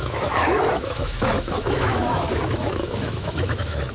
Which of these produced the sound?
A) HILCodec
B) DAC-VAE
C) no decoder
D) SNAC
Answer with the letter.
B